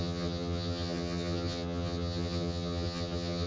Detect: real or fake fake